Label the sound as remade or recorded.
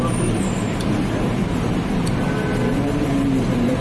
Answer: recorded